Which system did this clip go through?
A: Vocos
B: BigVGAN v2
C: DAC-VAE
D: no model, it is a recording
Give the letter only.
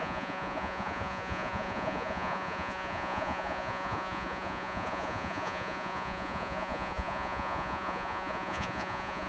A